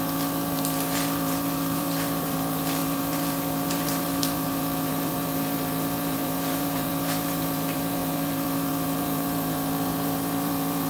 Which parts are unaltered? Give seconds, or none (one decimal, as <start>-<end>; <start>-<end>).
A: none